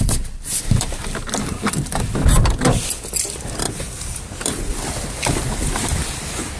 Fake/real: fake